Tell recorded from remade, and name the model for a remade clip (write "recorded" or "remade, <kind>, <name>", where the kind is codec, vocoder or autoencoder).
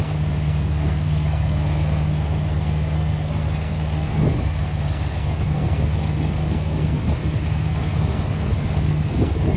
remade, codec, SNAC